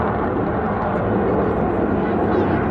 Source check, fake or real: real